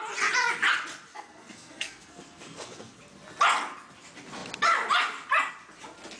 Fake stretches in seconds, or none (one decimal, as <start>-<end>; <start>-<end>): 1.1-3.0